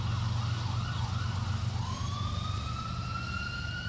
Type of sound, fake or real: real